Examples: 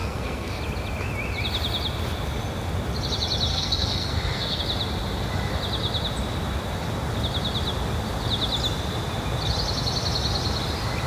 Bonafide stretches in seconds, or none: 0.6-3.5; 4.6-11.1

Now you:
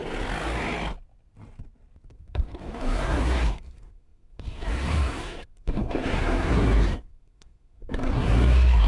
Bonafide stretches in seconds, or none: 0.0-2.1